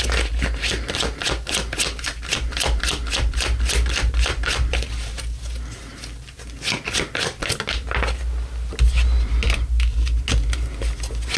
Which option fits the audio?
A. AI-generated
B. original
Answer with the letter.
B